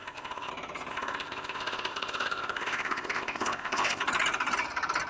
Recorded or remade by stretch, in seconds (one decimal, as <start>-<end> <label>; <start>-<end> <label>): 0.0-0.5 remade; 0.5-0.9 recorded; 0.9-4.0 remade; 4.0-5.1 recorded